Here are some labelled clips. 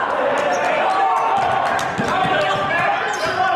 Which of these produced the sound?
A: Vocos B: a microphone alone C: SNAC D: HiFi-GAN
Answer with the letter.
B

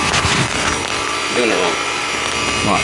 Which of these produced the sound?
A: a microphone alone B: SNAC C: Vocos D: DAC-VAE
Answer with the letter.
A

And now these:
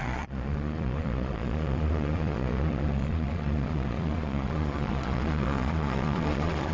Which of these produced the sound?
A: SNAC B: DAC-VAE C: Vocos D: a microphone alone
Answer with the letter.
C